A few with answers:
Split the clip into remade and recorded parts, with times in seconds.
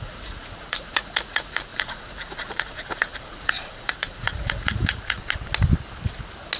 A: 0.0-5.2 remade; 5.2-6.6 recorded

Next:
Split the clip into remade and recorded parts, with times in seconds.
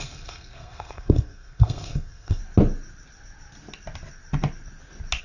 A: 0.0-2.4 remade; 2.4-5.2 recorded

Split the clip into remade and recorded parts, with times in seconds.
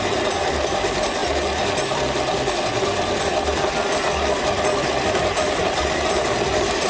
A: 0.0-6.9 recorded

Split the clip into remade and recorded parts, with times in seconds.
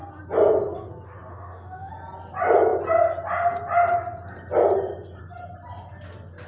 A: 0.0-1.3 recorded; 1.3-1.9 remade; 1.9-6.5 recorded